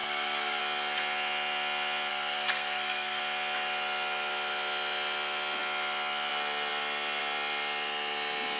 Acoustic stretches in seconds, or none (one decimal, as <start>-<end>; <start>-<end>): 0.6-2.1; 3.2-8.6